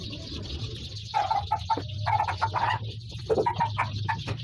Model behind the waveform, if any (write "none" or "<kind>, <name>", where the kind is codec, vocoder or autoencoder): none